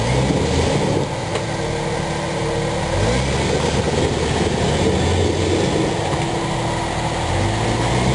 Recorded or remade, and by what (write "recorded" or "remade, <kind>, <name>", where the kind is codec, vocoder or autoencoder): recorded